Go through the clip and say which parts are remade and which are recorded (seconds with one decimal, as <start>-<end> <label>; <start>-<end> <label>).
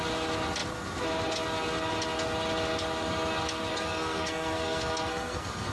0.0-3.7 recorded; 3.7-5.7 remade